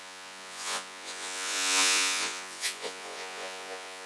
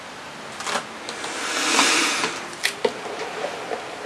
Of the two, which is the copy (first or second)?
first